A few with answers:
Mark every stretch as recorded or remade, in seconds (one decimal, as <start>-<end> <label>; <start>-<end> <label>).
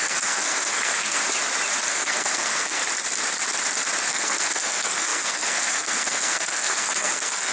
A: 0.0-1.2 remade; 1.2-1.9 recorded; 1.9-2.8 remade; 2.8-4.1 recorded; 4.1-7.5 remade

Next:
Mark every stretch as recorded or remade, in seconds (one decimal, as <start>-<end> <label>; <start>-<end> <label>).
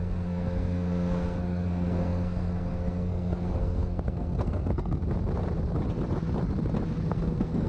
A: 0.0-5.0 remade; 5.0-7.1 recorded; 7.1-7.7 remade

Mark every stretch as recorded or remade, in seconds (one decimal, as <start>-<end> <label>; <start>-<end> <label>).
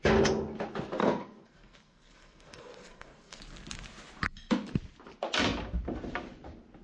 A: 0.0-1.0 recorded; 1.0-3.4 remade; 3.4-6.8 recorded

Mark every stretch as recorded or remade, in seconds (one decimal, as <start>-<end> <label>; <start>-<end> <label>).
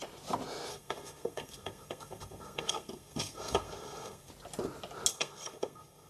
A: 0.0-0.7 recorded; 0.7-4.3 remade; 4.3-5.1 recorded; 5.1-6.1 remade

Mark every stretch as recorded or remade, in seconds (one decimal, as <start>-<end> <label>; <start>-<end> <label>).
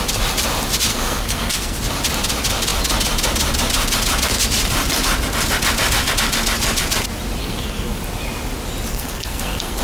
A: 0.0-0.9 recorded; 0.9-1.8 remade; 1.8-7.4 recorded; 7.4-8.0 remade; 8.0-8.9 recorded; 8.9-9.8 remade